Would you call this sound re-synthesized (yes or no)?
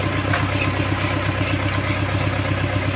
no